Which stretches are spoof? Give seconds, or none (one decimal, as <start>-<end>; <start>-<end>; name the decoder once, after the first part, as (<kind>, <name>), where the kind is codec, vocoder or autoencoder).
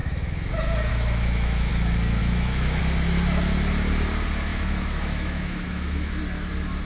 0.0-0.5 (autoencoder, DAC-VAE); 0.9-1.7; 2.2-2.8; 4.5-6.2